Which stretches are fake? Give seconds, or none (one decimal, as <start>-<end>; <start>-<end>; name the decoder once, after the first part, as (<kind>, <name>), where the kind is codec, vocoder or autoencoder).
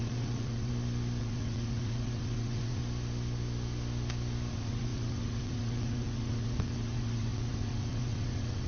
0.0-0.7 (vocoder, WaveNeXt); 1.2-2.8; 4.5-8.7